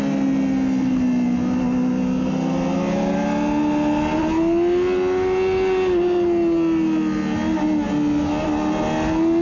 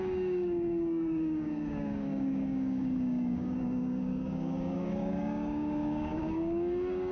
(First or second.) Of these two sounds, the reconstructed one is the second